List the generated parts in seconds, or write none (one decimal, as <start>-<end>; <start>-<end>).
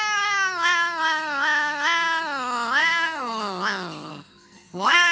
2.8-3.4; 4.1-5.1